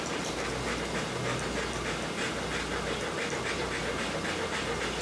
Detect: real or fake real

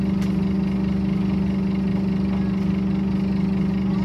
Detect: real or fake real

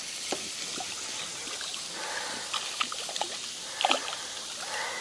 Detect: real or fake real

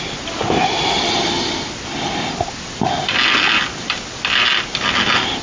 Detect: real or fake real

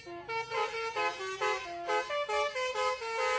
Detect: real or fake real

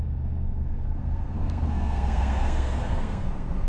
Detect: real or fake fake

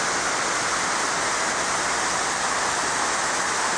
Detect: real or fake real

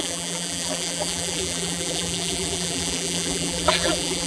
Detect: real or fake fake